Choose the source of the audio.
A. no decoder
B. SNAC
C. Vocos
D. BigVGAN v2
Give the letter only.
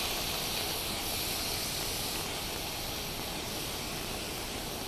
A